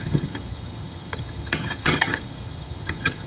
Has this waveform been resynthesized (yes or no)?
yes